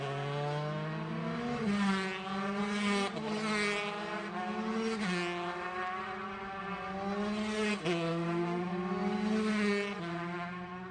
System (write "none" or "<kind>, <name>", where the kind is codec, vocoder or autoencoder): none